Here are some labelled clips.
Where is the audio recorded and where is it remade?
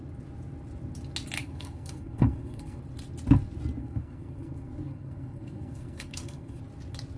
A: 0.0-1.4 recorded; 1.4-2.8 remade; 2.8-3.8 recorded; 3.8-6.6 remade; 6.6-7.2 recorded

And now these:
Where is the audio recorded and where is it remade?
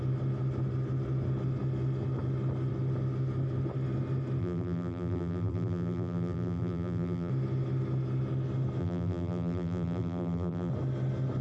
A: 0.0-4.4 recorded; 4.4-7.3 remade; 7.3-8.8 recorded; 8.8-10.7 remade; 10.7-11.4 recorded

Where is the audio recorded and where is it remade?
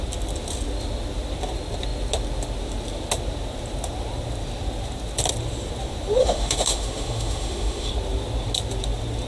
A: 0.0-6.2 recorded; 6.2-7.9 remade; 7.9-9.3 recorded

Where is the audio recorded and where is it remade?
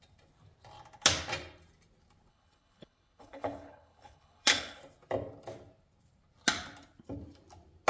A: 0.0-2.3 recorded; 2.3-4.8 remade; 4.8-7.9 recorded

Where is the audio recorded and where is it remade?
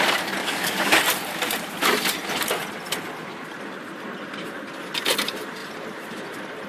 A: 0.0-0.4 recorded; 0.4-1.0 remade; 1.0-6.7 recorded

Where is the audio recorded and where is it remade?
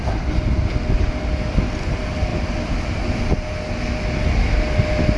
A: 0.0-5.2 recorded